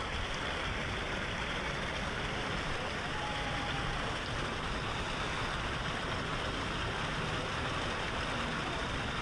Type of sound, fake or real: real